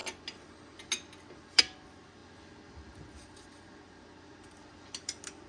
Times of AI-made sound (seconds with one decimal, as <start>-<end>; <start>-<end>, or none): none